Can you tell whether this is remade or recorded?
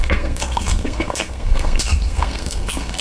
remade